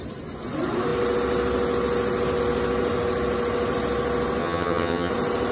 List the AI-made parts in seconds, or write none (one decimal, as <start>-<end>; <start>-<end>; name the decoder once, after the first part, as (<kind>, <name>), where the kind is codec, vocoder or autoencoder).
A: 4.4-5.1 (vocoder, HiFi-GAN)

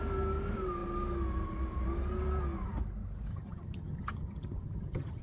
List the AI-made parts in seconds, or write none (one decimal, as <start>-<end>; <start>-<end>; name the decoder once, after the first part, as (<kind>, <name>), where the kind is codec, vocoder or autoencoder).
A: 3.3-5.2 (vocoder, HiFi-GAN)